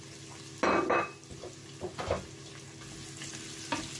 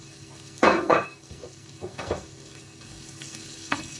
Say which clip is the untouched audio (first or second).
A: first